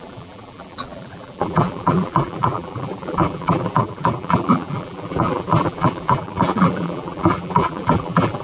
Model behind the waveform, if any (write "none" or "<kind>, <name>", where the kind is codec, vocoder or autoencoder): vocoder, BigVGAN v2